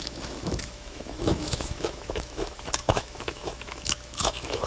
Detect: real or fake fake